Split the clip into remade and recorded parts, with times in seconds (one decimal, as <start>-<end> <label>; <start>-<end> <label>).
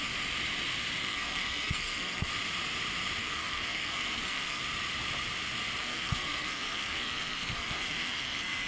0.0-1.0 recorded; 1.0-2.3 remade; 2.3-3.2 recorded; 3.2-4.6 remade; 4.6-5.8 recorded; 5.8-8.7 remade